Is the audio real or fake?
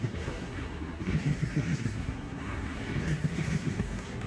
fake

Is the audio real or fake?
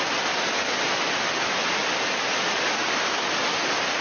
real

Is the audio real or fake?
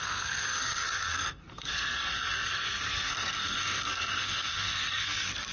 fake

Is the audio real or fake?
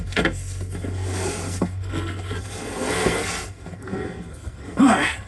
fake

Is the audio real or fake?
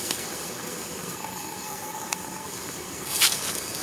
fake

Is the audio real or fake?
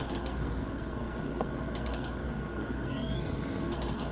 fake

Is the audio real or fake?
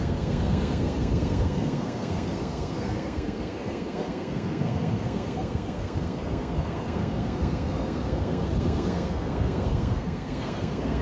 fake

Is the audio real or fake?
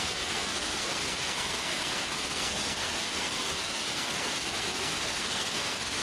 fake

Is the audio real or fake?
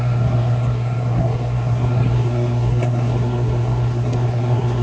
fake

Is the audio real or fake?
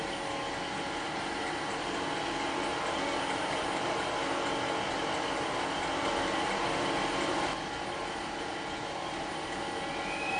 real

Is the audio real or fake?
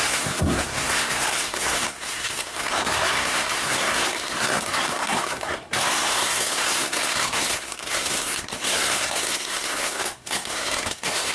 fake